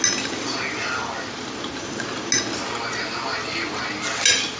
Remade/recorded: recorded